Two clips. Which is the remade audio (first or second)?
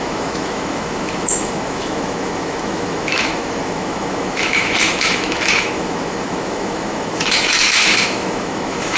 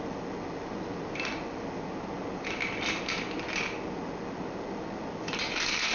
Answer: first